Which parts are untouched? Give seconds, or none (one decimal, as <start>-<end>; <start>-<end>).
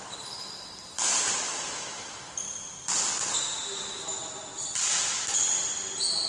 0.0-1.5; 2.3-6.3